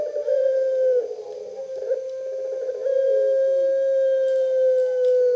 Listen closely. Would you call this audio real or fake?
real